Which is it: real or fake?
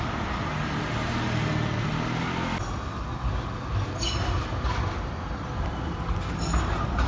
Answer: real